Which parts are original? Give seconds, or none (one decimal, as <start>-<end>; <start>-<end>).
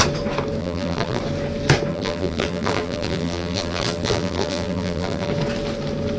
0.0-0.6; 1.2-1.9; 5.3-6.2